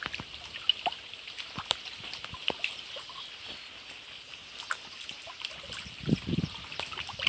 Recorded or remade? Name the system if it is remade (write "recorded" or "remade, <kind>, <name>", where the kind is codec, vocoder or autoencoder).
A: recorded